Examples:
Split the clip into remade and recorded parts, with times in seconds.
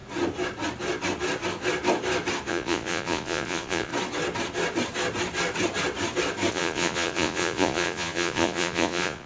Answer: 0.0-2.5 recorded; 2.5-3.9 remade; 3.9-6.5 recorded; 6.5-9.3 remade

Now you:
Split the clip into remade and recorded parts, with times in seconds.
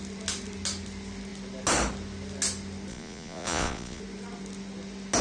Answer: 0.0-2.9 recorded; 2.9-4.0 remade; 4.0-5.2 recorded